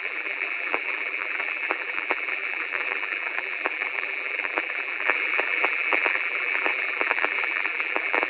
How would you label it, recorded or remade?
remade